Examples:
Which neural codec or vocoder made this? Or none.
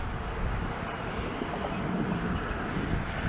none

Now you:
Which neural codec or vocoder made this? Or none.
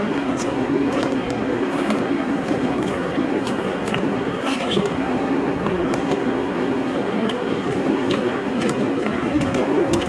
codec, SNAC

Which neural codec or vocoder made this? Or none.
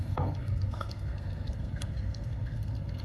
codec, SNAC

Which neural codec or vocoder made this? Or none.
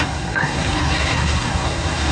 codec, SNAC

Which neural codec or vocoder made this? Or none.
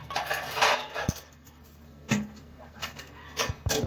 codec, SNAC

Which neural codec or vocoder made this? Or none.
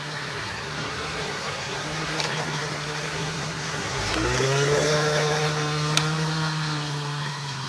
codec, SNAC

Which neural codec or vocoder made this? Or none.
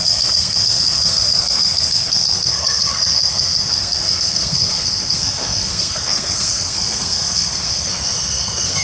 codec, SNAC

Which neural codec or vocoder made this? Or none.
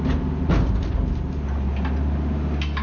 none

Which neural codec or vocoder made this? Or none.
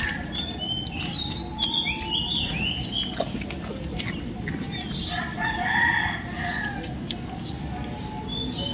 none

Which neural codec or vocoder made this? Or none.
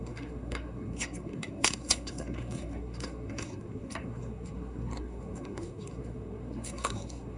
codec, SNAC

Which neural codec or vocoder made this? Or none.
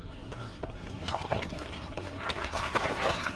codec, SNAC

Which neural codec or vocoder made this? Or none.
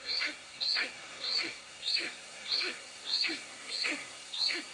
codec, SNAC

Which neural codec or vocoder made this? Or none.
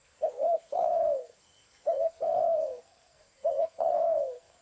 codec, SNAC